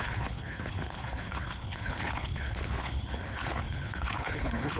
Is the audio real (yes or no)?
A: no